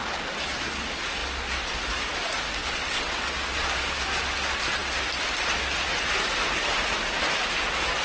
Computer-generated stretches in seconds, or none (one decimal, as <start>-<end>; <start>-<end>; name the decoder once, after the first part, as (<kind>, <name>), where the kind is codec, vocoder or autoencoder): 2.6-3.2 (vocoder, WaveNeXt)